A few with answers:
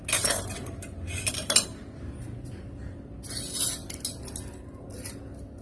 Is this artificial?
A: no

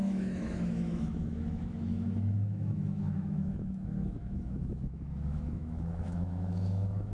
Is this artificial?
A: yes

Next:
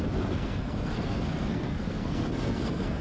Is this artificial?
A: yes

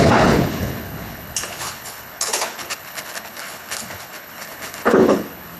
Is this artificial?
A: yes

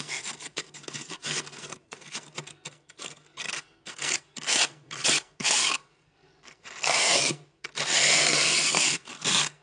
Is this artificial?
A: yes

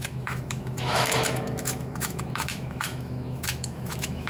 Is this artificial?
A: yes